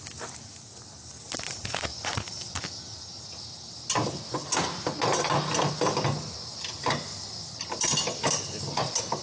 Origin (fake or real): real